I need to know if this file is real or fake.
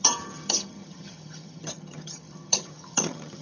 fake